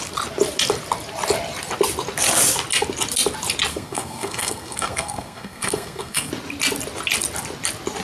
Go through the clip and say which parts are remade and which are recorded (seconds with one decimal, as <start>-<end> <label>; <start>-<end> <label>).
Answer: 0.0-3.7 recorded; 3.7-6.3 remade; 6.3-8.0 recorded